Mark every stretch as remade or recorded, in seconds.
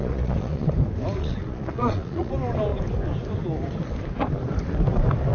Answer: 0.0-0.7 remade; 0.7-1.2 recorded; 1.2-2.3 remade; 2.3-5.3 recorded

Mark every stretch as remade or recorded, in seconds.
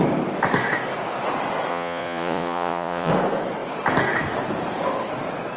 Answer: 0.0-1.7 recorded; 1.7-3.1 remade; 3.1-5.6 recorded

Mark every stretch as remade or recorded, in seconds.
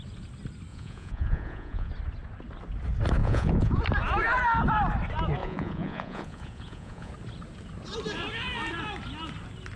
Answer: 0.0-0.7 recorded; 0.7-1.9 remade; 1.9-3.2 recorded; 3.2-3.8 remade; 3.8-5.4 recorded; 5.4-7.1 remade; 7.1-9.8 recorded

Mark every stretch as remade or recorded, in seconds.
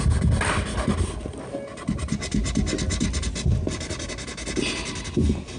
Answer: 0.0-5.6 recorded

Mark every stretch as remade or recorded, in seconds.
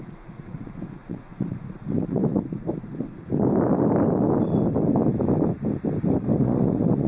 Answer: 0.0-3.2 remade; 3.2-6.4 recorded; 6.4-7.1 remade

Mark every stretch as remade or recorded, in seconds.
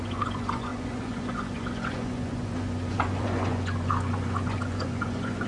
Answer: 0.0-5.5 remade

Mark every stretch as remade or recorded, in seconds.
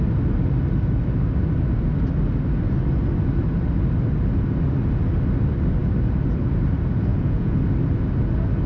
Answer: 0.0-7.1 recorded; 7.1-7.6 remade; 7.6-8.7 recorded